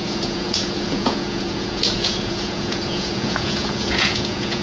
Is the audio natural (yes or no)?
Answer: no